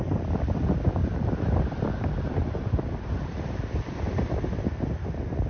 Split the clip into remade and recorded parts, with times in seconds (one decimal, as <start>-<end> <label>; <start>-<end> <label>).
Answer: 0.0-1.0 recorded; 1.0-4.3 remade; 4.3-5.5 recorded